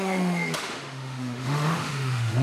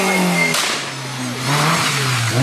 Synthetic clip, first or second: first